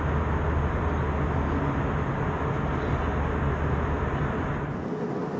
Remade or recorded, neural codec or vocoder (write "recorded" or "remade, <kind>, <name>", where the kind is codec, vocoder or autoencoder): recorded